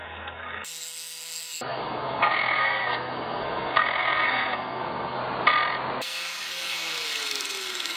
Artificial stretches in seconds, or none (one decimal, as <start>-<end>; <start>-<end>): 0.0-5.2; 6.0-8.0